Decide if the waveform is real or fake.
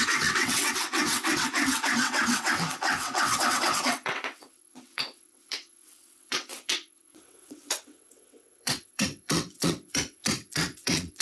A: fake